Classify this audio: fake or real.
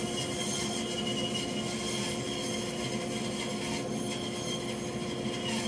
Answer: real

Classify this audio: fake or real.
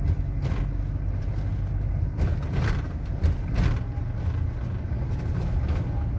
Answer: real